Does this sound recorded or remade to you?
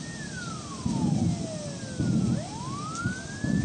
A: recorded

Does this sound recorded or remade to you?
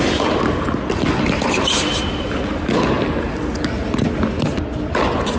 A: recorded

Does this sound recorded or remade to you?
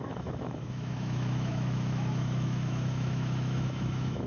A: remade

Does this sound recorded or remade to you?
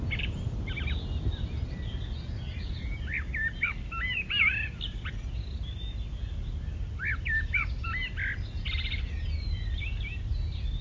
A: recorded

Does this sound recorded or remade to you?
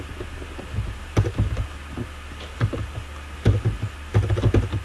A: recorded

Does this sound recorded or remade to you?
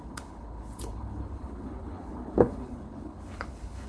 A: remade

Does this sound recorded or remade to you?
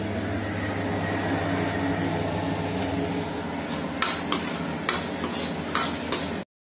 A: recorded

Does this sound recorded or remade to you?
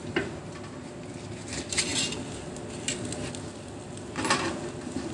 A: recorded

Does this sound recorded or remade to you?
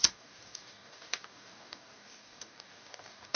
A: remade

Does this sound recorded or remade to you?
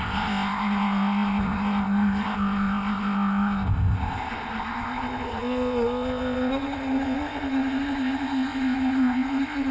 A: remade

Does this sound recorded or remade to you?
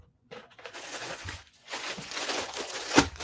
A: remade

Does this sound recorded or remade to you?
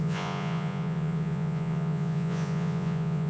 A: remade